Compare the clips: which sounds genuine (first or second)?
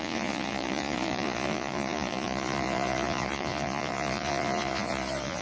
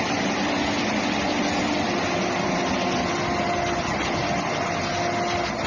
second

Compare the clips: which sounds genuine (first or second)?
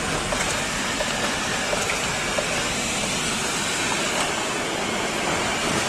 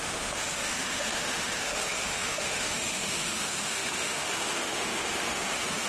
first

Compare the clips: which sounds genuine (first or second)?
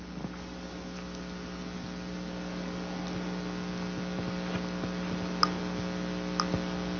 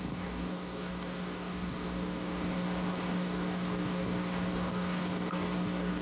first